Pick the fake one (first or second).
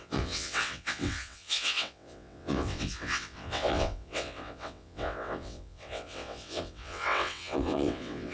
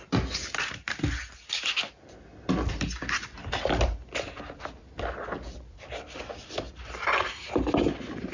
first